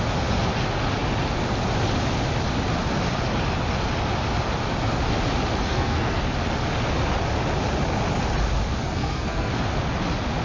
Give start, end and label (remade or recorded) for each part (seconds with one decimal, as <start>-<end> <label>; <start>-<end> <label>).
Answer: 0.0-5.7 recorded; 5.7-6.2 remade; 6.2-8.8 recorded; 8.8-9.5 remade; 9.5-10.4 recorded

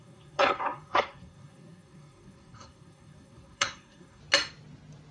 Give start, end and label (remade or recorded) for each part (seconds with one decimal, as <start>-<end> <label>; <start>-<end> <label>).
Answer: 0.0-4.2 remade; 4.2-5.1 recorded

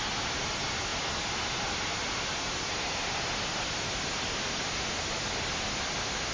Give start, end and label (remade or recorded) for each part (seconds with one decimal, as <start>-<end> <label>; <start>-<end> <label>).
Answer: 0.0-6.3 recorded

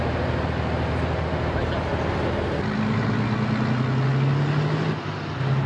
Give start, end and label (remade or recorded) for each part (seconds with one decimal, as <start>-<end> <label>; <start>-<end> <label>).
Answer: 0.0-5.7 recorded